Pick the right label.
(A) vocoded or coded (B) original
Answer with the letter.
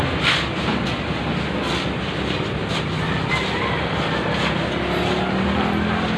B